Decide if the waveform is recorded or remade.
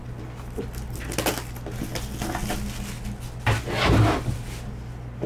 recorded